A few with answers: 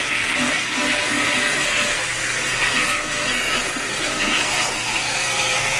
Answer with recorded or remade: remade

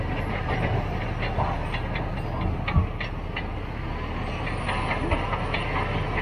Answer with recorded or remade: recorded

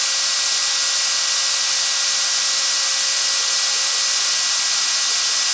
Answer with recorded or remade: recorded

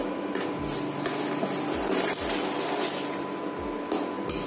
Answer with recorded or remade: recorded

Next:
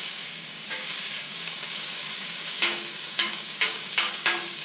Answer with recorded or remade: remade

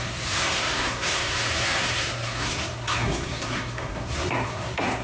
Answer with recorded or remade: remade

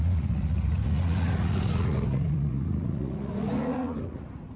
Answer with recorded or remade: remade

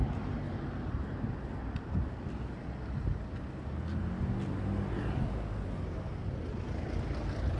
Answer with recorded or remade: recorded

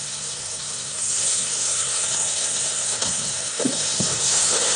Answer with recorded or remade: remade